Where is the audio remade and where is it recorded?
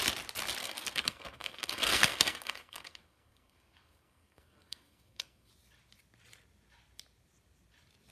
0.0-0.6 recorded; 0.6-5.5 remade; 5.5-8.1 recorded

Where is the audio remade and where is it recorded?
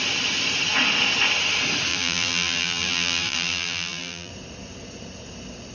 0.0-1.9 recorded; 1.9-4.3 remade; 4.3-5.7 recorded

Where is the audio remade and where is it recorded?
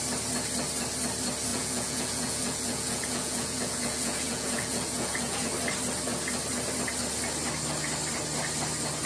0.0-1.5 recorded; 1.5-5.5 remade; 5.5-9.1 recorded